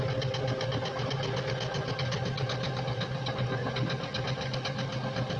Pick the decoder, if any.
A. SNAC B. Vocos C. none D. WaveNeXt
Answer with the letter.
C